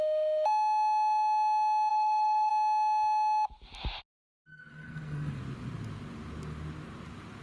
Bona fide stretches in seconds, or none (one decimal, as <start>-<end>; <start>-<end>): 0.0-1.9; 2.5-4.5; 5.4-7.4